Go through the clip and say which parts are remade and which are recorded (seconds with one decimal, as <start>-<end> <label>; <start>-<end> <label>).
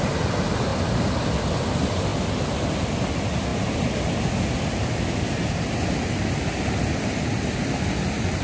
0.0-8.4 recorded